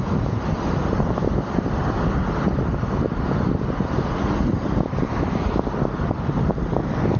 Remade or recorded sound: recorded